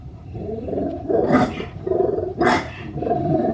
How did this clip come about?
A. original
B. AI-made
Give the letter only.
B